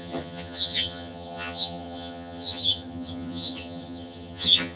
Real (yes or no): no